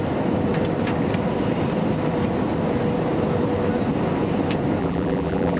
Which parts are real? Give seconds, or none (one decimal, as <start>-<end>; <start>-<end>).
0.0-4.8